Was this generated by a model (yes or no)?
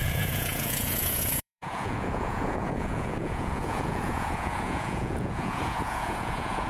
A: yes